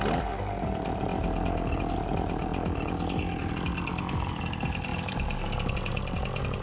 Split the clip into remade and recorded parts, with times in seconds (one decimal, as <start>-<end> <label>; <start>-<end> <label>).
0.0-6.6 recorded